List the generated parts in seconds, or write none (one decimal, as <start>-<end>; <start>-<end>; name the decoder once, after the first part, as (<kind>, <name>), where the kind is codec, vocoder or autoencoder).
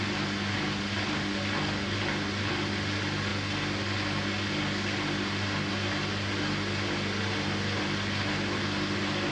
none